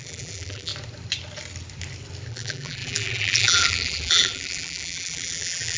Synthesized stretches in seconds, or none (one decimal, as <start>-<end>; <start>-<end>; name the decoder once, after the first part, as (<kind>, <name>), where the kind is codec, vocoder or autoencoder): 0.0-0.7 (vocoder, BigVGAN v2); 2.3-5.8